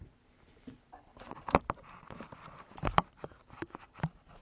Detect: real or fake fake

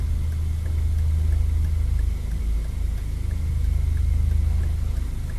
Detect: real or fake real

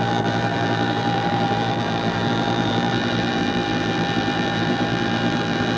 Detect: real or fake fake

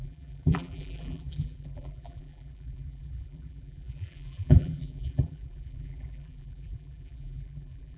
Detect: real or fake fake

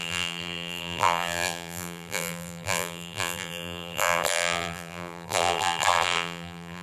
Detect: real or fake fake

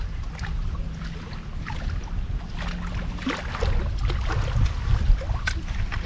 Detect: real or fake real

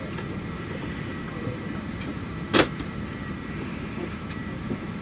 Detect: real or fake fake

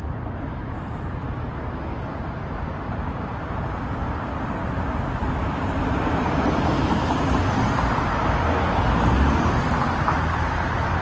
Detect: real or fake real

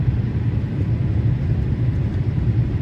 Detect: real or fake fake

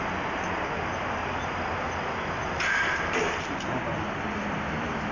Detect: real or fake real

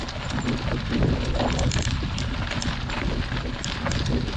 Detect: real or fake real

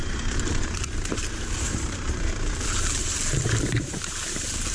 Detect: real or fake fake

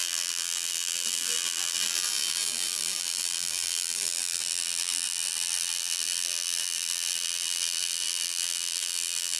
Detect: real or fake fake